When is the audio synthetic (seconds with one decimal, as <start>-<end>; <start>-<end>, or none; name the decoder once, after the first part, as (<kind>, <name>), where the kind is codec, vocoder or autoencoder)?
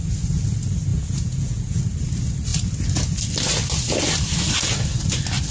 0.9-1.8 (vocoder, Vocos)